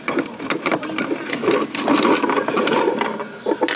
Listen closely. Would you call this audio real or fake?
real